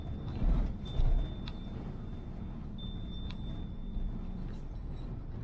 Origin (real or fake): real